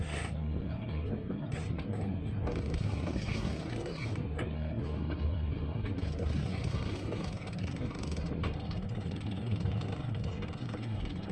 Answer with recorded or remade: remade